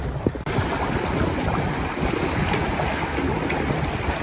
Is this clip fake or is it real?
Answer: real